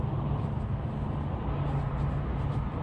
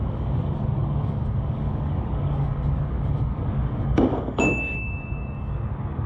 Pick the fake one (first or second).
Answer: second